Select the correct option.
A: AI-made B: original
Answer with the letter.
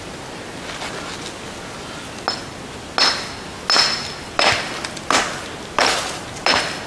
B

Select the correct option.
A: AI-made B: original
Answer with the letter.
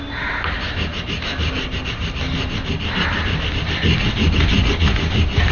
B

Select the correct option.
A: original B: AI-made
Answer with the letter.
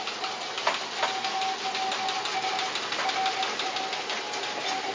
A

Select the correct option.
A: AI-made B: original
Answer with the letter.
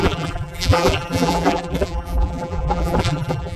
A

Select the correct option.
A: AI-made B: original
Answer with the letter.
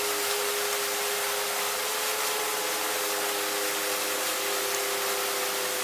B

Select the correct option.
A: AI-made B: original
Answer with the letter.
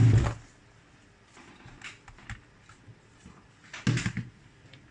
B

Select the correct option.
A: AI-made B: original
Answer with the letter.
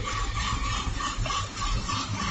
A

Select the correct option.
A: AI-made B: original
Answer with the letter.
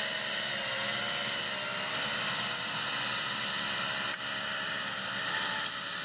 B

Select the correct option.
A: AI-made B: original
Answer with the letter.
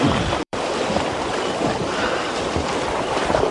A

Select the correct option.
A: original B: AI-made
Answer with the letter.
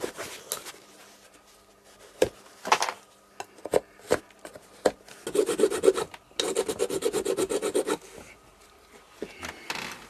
A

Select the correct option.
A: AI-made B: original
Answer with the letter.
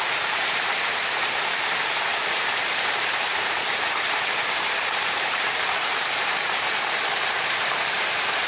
A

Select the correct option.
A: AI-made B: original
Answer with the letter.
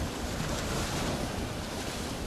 A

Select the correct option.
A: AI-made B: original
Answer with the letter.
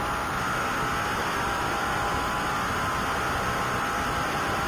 B